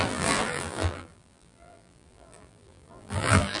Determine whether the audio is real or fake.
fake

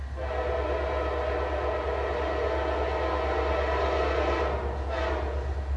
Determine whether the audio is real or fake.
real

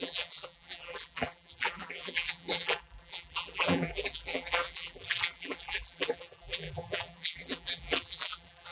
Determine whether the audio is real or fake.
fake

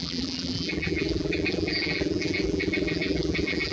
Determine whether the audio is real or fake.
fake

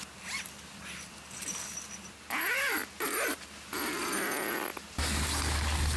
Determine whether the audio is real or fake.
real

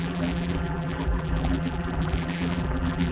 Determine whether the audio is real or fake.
fake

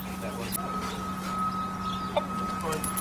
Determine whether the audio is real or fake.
real